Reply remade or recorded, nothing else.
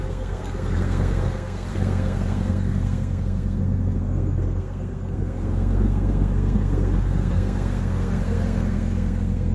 remade